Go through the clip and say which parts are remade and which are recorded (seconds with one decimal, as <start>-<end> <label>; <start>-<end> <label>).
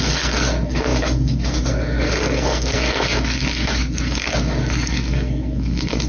0.0-6.1 remade